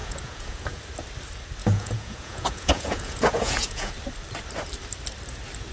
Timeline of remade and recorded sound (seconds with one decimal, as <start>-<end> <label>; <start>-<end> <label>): 0.0-0.8 remade; 0.8-1.6 recorded; 1.6-3.9 remade; 3.9-5.7 recorded